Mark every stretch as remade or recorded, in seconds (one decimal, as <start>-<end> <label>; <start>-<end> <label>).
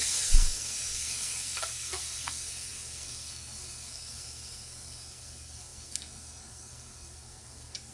0.0-7.9 remade